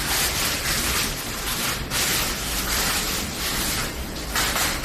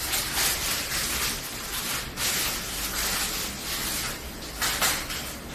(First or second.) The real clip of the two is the second